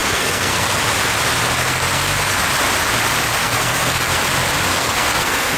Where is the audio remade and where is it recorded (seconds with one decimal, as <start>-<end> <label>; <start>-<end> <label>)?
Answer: 0.0-0.8 remade; 0.8-1.6 recorded; 1.6-2.4 remade; 2.4-3.4 recorded; 3.4-4.2 remade; 4.2-4.7 recorded; 4.7-5.6 remade